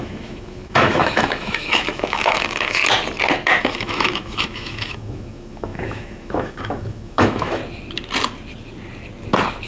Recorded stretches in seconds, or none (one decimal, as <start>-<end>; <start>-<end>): 2.8-3.6; 7.6-9.7